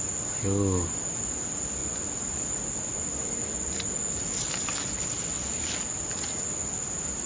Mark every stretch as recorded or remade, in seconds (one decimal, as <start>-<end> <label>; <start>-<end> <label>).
0.0-7.3 recorded